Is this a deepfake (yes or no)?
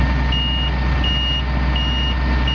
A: no